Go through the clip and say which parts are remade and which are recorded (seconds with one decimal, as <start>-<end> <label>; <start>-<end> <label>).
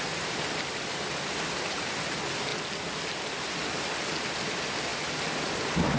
0.0-2.5 remade; 2.5-4.5 recorded; 4.5-6.0 remade